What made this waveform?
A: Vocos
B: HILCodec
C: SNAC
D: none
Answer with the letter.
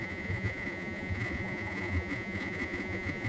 A